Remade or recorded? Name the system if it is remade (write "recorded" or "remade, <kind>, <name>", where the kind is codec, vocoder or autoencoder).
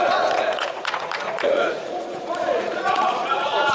remade, vocoder, Vocos